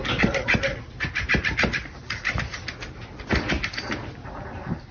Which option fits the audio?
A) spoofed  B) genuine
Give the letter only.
B